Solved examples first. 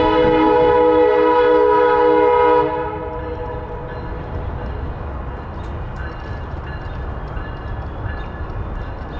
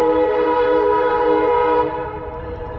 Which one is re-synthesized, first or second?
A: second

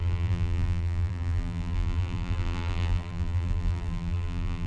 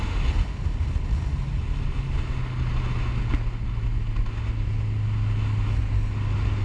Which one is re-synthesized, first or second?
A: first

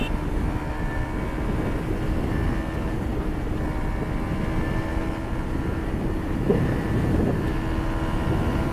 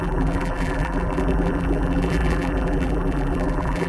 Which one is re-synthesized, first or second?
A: second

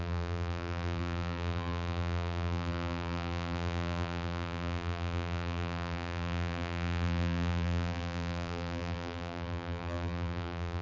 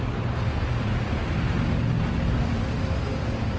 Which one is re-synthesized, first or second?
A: first